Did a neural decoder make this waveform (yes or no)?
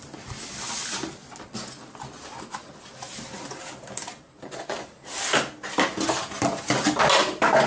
no